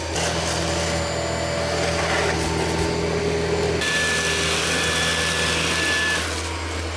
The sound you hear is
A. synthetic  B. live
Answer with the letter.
B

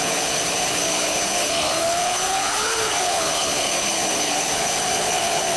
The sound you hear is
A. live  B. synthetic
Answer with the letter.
B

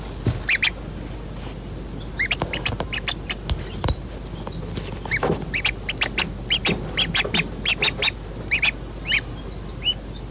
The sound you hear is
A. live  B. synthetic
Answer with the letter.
A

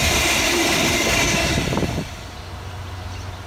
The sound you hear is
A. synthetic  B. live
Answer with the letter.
B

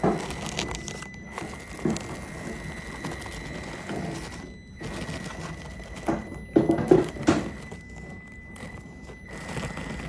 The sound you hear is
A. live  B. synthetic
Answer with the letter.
A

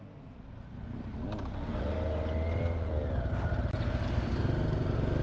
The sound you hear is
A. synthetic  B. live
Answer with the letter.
B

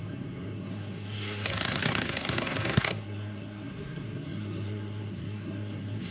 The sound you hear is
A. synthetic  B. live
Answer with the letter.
A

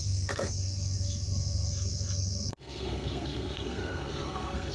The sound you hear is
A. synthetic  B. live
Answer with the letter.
A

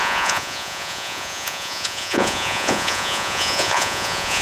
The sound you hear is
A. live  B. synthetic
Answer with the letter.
B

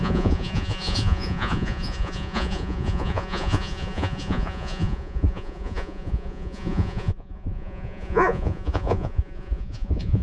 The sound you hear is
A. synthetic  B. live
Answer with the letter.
A